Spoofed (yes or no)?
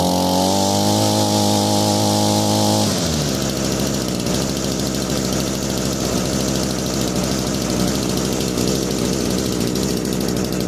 no